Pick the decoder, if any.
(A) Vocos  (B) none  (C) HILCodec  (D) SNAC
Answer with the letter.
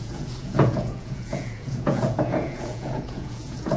A